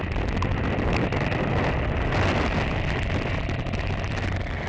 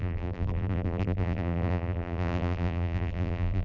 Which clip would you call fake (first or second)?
second